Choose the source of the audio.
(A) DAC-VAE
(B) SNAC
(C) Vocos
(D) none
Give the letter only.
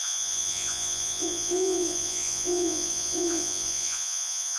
C